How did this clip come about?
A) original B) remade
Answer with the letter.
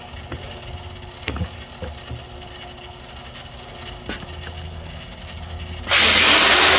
A